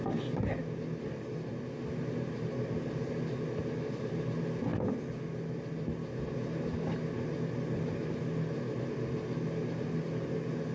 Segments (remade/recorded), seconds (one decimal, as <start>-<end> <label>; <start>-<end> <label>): 0.0-10.7 recorded